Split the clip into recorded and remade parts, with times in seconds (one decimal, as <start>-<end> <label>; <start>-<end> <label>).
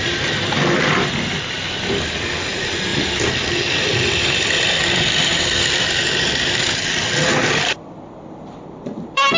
0.0-2.9 recorded; 2.9-6.7 remade; 6.7-7.4 recorded; 7.4-8.0 remade; 8.0-9.4 recorded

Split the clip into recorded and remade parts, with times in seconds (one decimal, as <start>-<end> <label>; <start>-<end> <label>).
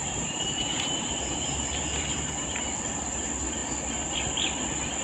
0.0-1.8 remade; 1.8-5.0 recorded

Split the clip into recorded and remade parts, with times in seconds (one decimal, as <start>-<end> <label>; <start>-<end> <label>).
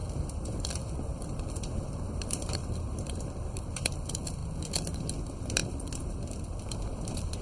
0.0-1.1 recorded; 1.1-3.9 remade; 3.9-4.4 recorded; 4.4-5.0 remade; 5.0-7.4 recorded